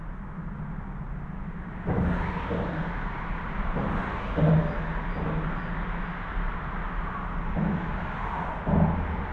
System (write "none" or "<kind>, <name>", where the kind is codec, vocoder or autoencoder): none